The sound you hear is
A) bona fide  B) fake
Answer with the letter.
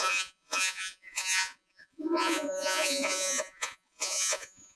B